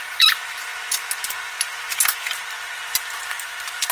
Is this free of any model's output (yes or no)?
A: yes